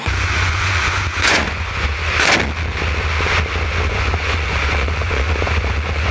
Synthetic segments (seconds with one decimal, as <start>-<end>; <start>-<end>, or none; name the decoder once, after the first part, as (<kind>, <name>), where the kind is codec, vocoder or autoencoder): 0.0-2.0 (vocoder, Vocos); 3.9-6.1